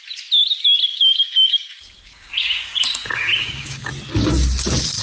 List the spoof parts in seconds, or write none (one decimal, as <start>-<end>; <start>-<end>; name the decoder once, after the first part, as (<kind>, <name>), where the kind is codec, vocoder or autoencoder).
0.9-3.9 (codec, DAC)